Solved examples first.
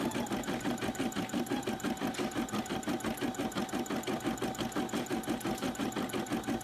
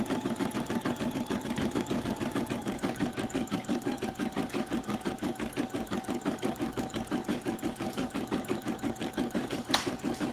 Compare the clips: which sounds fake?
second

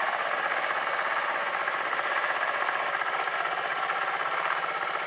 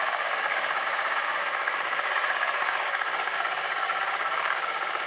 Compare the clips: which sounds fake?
second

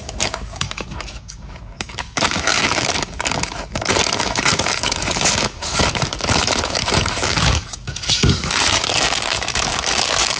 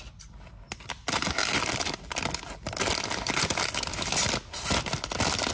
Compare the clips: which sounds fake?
first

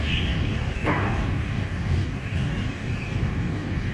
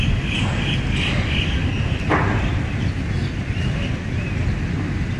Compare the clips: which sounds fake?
first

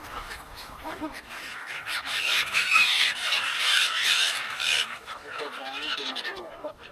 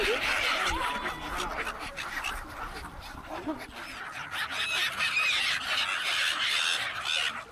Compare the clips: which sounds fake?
first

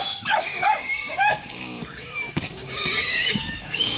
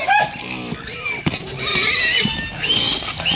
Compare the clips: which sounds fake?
first